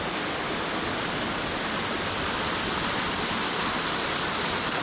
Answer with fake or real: real